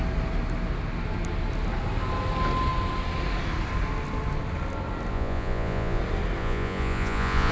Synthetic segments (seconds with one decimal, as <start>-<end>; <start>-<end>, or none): 5.1-6.0; 6.4-7.5